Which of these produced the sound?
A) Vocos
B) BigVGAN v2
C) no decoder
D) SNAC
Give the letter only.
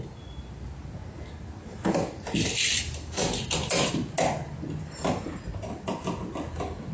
C